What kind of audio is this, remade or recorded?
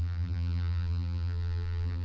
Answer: remade